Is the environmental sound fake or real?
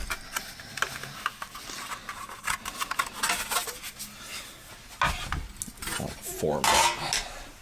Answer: real